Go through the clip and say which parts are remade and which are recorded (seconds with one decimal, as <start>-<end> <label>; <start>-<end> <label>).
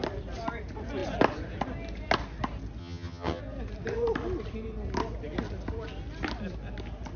0.0-2.8 recorded; 2.8-3.4 remade; 3.4-7.2 recorded